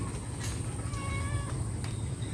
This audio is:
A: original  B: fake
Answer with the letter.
A